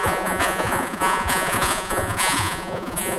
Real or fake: fake